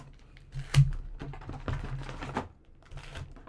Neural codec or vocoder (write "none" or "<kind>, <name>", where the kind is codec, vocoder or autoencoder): none